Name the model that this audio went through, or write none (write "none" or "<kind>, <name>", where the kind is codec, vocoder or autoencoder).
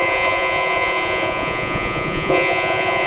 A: vocoder, Vocos